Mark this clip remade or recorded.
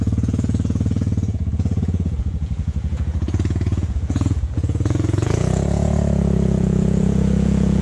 remade